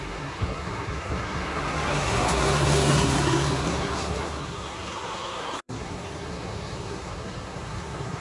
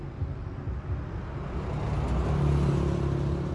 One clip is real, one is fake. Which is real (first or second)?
second